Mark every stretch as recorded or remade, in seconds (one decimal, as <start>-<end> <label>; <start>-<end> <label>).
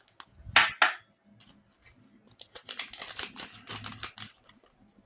0.0-5.1 recorded